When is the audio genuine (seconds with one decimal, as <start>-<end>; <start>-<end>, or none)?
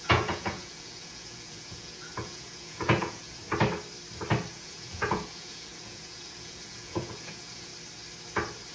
3.4-4.5; 7.7-8.7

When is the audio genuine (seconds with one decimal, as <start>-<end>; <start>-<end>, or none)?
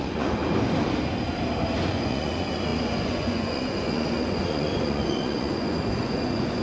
0.4-1.9